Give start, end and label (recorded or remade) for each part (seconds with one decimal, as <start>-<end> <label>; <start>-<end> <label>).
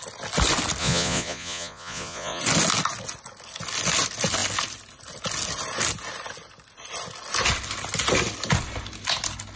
0.0-0.8 recorded; 0.8-2.4 remade; 2.4-9.6 recorded